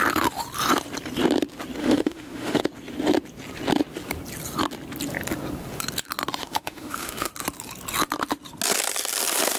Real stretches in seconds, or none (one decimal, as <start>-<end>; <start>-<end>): 0.0-1.8; 2.6-6.4; 7.3-9.6